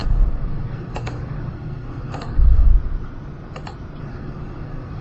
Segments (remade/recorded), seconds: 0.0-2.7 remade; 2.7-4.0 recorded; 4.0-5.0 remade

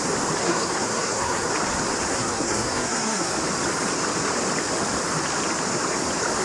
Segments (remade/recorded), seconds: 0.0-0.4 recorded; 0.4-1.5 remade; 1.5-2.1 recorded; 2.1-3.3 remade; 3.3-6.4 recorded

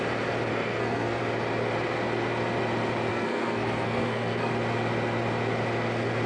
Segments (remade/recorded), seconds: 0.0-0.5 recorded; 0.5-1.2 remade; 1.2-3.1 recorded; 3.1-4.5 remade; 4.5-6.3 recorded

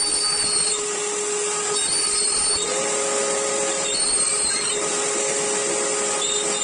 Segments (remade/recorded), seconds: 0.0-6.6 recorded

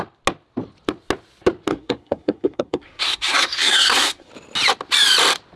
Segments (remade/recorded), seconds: 0.0-1.7 recorded; 1.7-4.3 remade; 4.3-5.6 recorded

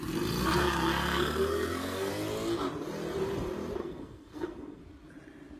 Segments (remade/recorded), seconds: 0.0-0.4 recorded; 0.4-2.1 remade; 2.1-3.8 recorded; 3.8-4.8 remade; 4.8-5.6 recorded

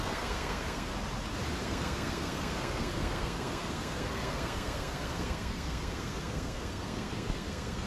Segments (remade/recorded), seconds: 0.0-0.9 remade; 0.9-1.6 recorded; 1.6-7.9 remade